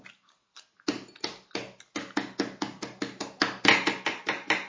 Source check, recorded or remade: recorded